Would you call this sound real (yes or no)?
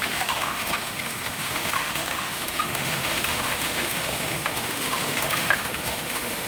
no